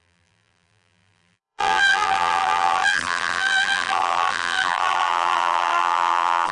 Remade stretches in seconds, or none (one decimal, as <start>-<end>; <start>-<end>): 0.0-6.5